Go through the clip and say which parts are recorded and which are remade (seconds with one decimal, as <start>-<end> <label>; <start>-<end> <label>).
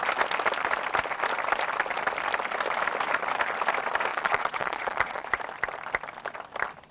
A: 0.0-4.1 recorded; 4.1-5.4 remade; 5.4-6.9 recorded